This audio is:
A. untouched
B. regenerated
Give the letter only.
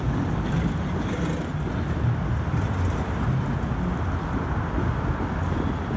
A